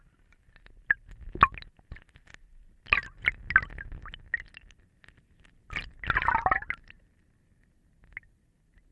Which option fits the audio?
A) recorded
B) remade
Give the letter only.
A